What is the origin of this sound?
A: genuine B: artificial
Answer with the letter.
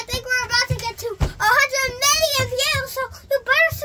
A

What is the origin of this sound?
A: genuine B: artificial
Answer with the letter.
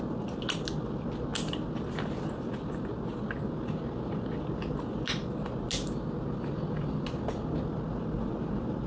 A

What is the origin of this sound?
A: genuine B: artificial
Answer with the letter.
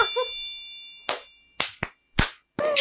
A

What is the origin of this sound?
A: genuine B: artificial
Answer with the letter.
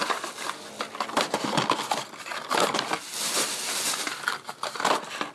A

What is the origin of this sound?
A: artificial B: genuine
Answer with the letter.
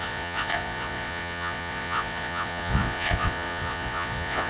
A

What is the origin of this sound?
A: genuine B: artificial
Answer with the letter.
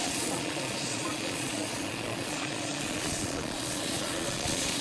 B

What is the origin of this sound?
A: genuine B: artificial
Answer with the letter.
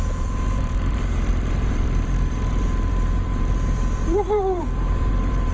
B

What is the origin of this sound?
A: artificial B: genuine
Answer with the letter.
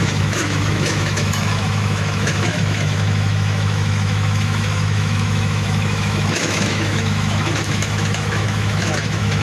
A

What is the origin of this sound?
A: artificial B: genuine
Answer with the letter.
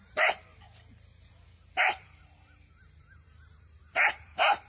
A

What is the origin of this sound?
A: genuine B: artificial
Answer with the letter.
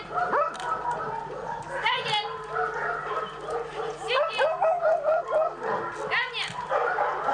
A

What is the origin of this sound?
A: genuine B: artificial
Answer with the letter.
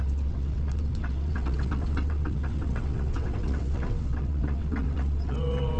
B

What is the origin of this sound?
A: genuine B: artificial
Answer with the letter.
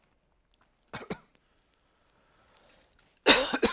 A